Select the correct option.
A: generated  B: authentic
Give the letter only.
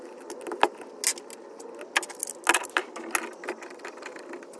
B